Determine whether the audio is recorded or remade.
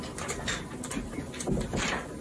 recorded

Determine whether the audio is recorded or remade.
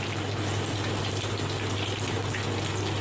recorded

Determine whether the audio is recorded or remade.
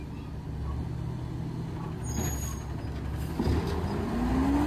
recorded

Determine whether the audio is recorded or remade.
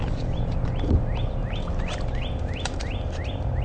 remade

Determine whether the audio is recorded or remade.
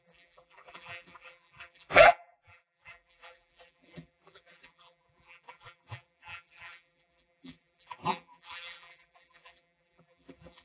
remade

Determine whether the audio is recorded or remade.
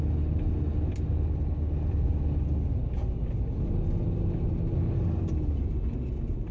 recorded